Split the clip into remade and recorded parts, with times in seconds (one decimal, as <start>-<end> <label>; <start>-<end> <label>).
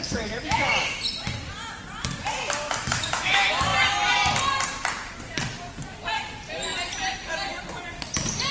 0.0-0.7 remade; 0.7-2.7 recorded; 2.7-3.7 remade; 3.7-8.5 recorded